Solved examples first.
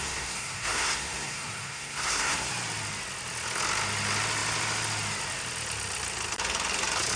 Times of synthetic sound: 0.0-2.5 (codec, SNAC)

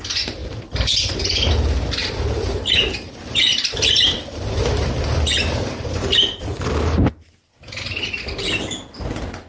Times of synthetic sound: 0.4-1.2 (vocoder, BigVGAN v2); 2.0-7.1